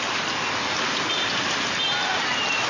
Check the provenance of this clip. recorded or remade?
recorded